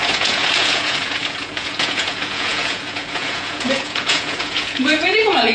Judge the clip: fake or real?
fake